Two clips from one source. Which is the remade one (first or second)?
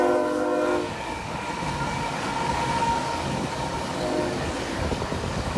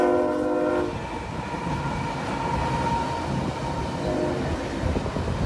first